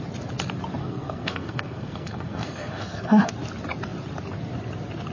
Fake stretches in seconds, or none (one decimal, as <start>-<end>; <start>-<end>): 0.8-3.3